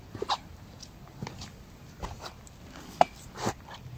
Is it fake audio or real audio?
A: real